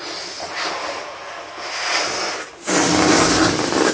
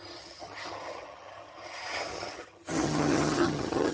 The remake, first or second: second